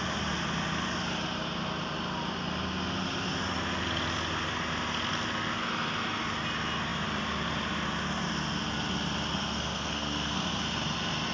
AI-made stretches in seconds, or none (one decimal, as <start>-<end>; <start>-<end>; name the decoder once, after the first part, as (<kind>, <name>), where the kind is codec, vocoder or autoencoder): 9.3-10.6 (codec, SNAC)

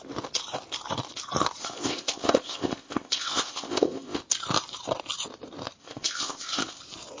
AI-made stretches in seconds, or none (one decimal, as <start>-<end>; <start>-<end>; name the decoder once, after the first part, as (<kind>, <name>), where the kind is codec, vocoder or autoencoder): 1.6-4.2 (codec, ZipCodec); 5.8-6.8

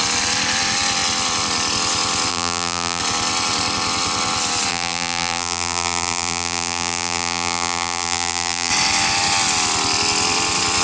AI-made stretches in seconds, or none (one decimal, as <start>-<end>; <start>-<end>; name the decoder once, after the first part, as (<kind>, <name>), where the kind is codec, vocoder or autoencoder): 2.3-3.0 (vocoder, BigVGAN v2); 4.7-8.7